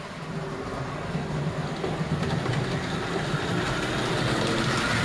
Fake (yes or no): no